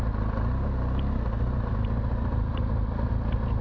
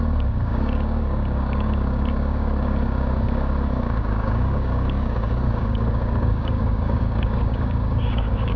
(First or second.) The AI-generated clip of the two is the second